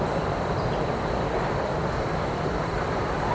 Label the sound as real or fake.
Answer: real